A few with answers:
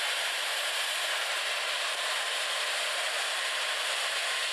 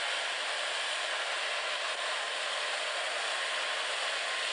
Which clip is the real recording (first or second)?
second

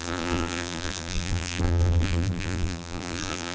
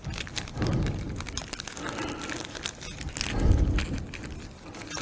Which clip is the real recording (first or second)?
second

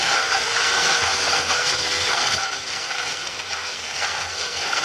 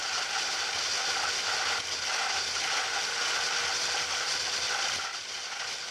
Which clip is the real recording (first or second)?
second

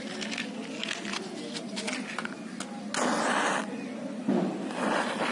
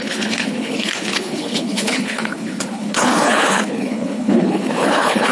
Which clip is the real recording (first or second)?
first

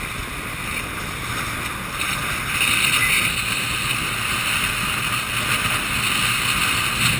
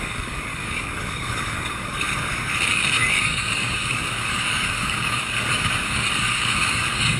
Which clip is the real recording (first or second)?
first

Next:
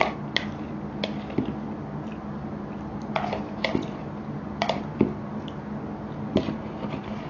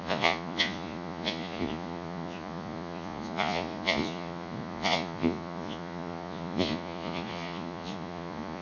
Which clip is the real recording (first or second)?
first